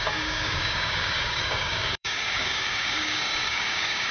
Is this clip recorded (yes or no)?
no